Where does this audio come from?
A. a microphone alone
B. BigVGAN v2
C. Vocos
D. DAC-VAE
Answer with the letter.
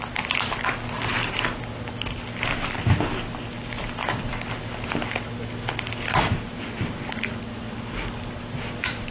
B